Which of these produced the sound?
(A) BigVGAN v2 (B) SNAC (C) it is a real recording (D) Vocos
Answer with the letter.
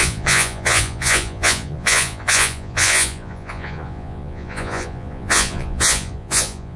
D